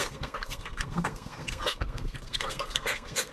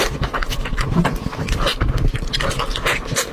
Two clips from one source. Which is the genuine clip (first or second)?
second